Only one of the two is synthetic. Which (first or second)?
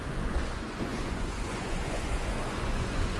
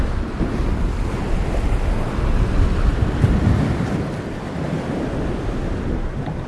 first